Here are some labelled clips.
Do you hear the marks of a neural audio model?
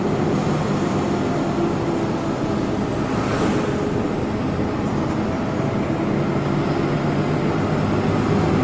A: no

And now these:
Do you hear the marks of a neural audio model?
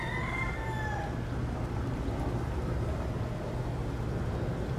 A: no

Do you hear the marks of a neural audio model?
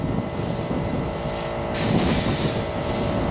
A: yes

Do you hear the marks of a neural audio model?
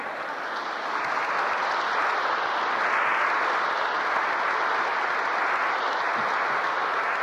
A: no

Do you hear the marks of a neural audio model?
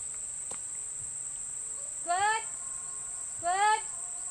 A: no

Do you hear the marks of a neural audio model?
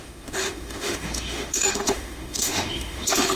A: yes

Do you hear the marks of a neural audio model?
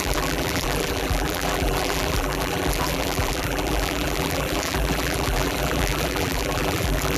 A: yes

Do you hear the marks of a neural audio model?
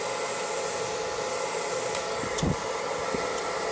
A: no